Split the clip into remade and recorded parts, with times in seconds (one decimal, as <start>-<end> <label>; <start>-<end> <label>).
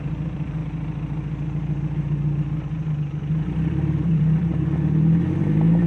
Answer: 0.0-0.6 remade; 0.6-3.3 recorded; 3.3-4.5 remade; 4.5-5.9 recorded